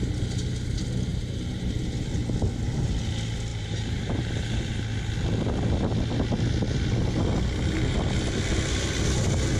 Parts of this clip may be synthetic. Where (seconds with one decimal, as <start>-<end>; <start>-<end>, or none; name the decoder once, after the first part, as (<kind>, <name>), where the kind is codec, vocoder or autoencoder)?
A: 1.1-1.9 (vocoder, BigVGAN v2); 3.5-4.8

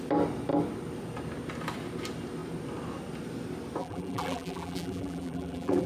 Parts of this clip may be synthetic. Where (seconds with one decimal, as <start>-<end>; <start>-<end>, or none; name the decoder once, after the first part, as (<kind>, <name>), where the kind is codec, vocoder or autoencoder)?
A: 3.8-5.9 (vocoder, BigVGAN v2)

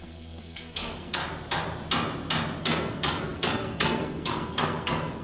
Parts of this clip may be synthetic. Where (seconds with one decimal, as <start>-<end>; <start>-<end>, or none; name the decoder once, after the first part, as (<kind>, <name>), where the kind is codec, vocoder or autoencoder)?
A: 0.0-1.2 (codec, SNAC); 2.6-5.2

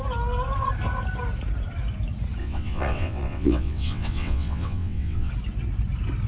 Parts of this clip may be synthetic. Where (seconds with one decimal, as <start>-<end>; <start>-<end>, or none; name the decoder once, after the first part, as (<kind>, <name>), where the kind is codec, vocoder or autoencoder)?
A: 2.4-5.3 (vocoder, WaveNeXt)

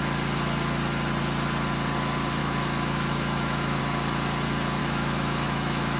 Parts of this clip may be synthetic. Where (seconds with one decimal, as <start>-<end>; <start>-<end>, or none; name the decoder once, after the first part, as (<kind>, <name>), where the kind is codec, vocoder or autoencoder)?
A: 2.4-3.8 (autoencoder, DAC-VAE); 4.8-6.0